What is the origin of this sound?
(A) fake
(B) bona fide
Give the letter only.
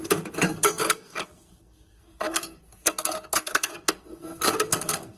A